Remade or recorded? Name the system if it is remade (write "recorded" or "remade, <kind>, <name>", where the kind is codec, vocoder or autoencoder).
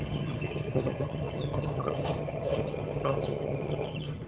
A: remade, vocoder, HiFi-GAN